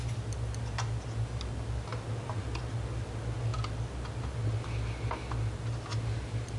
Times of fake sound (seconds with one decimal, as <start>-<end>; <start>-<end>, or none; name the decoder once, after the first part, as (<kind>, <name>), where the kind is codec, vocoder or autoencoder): none